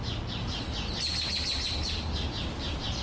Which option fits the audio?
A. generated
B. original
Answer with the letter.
B